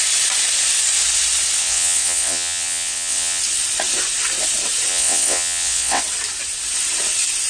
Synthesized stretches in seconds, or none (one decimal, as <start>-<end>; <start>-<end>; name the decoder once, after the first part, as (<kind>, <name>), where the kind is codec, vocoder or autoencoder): 1.6-3.4 (vocoder, WaveNeXt); 4.9-6.0